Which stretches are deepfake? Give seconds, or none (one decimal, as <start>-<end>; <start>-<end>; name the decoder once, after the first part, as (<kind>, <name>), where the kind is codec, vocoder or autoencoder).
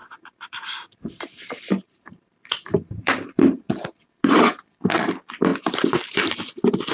0.0-4.0 (vocoder, BigVGAN v2); 5.5-6.9